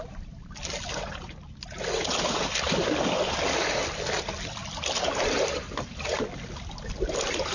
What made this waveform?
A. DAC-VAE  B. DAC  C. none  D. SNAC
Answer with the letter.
C